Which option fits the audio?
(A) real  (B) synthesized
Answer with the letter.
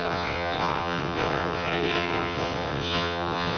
B